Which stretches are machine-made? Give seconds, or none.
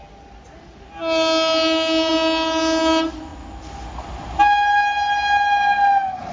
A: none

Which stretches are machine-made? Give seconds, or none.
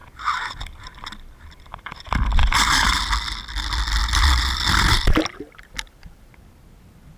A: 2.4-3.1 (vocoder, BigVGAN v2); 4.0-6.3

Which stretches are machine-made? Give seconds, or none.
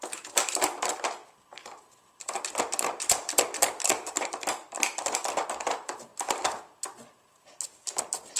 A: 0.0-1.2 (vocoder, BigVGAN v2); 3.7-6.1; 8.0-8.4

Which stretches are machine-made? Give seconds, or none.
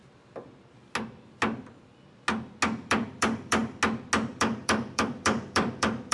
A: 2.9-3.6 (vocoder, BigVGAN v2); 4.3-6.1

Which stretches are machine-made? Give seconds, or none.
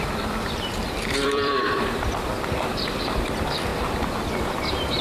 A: 0.0-3.7 (vocoder, BigVGAN v2); 4.3-5.0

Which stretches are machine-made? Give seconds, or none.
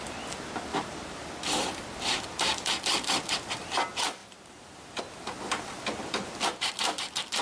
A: 0.7-1.3 (vocoder, BigVGAN v2); 4.2-5.0